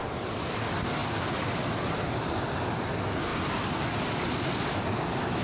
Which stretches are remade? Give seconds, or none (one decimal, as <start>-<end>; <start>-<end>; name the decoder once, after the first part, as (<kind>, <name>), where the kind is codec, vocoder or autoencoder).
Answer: none